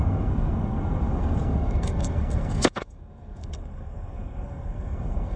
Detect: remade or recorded remade